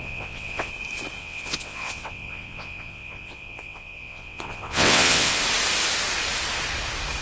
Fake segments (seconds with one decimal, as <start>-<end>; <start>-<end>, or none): 0.0-0.7; 1.2-5.4